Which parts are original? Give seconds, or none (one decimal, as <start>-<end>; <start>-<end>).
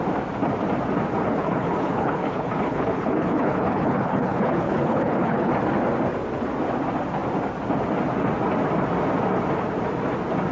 0.0-1.2; 5.5-10.5